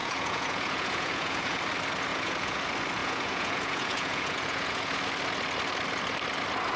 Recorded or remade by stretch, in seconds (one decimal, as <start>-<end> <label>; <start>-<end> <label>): 0.0-1.6 remade; 1.6-2.1 recorded; 2.1-2.6 remade; 2.6-3.0 recorded; 3.0-5.0 remade; 5.0-6.8 recorded